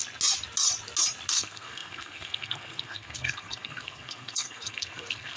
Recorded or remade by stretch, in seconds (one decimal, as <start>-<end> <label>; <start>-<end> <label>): 0.0-1.3 recorded; 1.3-5.4 remade